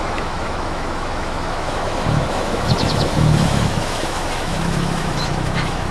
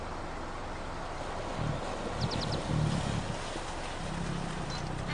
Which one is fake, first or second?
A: first